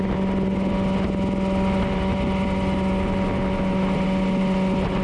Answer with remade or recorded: recorded